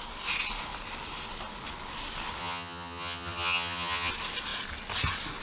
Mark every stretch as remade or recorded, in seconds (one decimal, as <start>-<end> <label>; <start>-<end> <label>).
0.0-2.4 recorded; 2.4-4.1 remade; 4.1-5.4 recorded